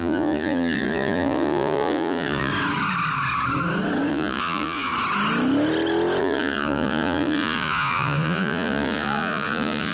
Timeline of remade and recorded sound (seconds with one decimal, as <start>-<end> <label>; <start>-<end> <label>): 0.0-2.5 remade; 2.5-4.1 recorded; 4.1-4.9 remade; 4.9-6.2 recorded; 6.2-9.9 remade